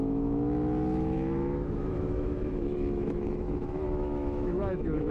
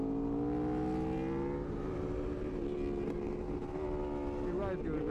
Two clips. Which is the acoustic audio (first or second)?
second